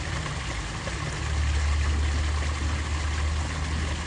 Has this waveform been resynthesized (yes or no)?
no